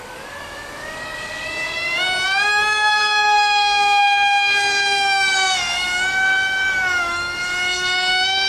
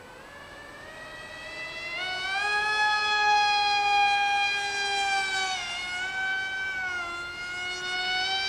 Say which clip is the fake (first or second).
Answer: first